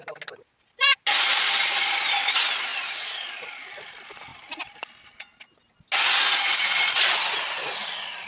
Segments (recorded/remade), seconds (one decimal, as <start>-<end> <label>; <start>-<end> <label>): 0.0-2.7 recorded; 2.7-3.3 remade; 3.3-8.3 recorded

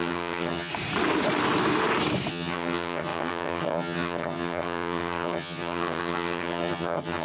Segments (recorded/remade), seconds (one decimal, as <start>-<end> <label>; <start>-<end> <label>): 0.0-0.7 remade; 0.7-2.3 recorded; 2.3-7.2 remade

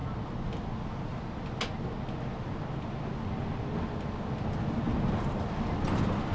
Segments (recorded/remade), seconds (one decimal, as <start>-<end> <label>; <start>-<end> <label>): 0.0-6.3 recorded

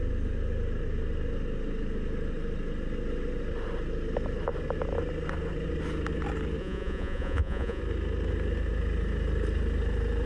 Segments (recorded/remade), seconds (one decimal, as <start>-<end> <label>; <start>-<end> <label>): 0.0-6.6 recorded; 6.6-7.8 remade; 7.8-10.3 recorded

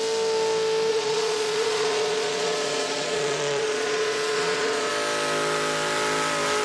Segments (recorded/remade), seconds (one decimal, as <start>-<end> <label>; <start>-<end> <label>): 0.0-0.9 recorded; 0.9-4.9 remade; 4.9-6.6 recorded

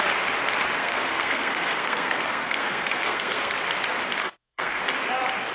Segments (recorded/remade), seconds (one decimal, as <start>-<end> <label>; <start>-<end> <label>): 0.0-0.8 recorded; 0.8-3.5 remade; 3.5-4.2 recorded; 4.2-4.8 remade; 4.8-5.5 recorded

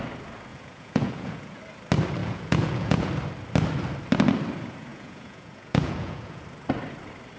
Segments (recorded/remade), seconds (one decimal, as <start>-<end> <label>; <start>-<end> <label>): 0.0-0.5 recorded; 0.5-1.6 remade; 1.6-2.2 recorded; 2.2-3.1 remade; 3.1-4.9 recorded; 4.9-6.4 remade; 6.4-7.4 recorded